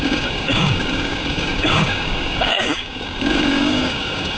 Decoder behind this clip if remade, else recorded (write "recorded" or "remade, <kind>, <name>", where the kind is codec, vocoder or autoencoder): remade, codec, DAC